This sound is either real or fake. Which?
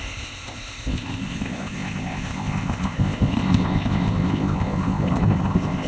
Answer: fake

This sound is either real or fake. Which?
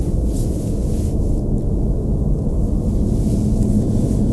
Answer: real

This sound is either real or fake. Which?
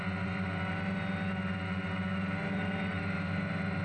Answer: real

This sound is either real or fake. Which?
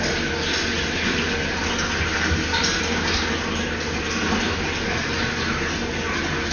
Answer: real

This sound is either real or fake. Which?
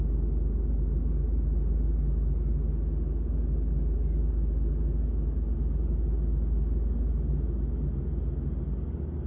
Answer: real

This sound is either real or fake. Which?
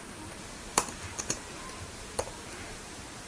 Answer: fake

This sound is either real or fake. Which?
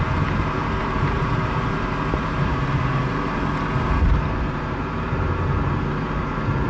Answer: fake